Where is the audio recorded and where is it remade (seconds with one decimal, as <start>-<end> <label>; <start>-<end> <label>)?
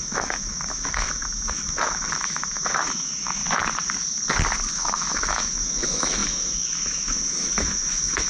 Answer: 0.0-3.4 remade; 3.4-4.7 recorded; 4.7-8.3 remade